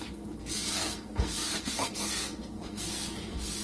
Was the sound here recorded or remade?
remade